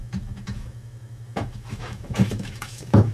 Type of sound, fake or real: fake